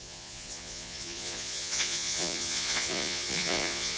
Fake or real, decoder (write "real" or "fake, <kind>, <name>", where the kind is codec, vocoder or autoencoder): fake, vocoder, Vocos